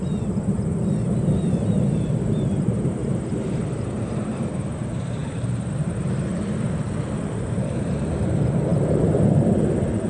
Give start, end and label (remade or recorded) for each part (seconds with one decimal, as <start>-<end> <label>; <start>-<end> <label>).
0.0-10.1 remade